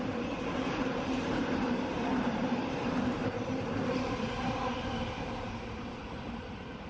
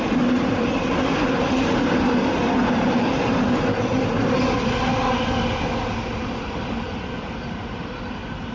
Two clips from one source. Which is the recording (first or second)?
second